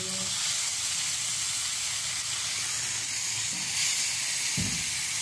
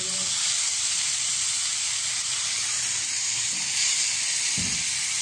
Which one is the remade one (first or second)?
second